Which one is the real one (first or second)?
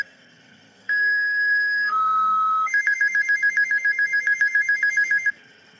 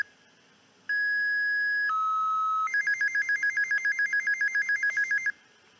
second